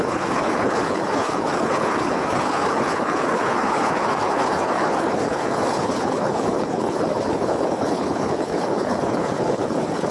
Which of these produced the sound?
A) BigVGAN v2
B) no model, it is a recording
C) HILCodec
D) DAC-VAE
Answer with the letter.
C